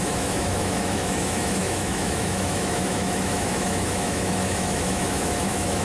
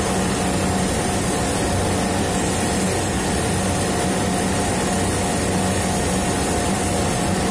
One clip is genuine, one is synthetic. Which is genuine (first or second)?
second